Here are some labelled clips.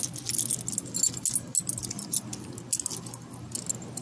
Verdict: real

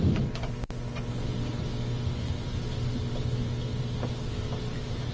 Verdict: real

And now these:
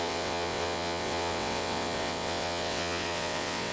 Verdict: fake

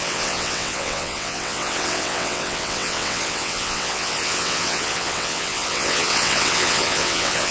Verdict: fake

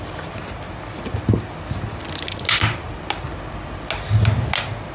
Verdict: real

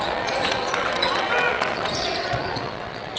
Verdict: fake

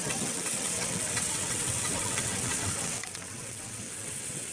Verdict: fake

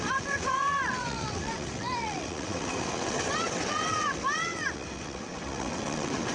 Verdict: fake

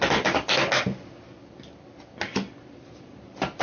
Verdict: real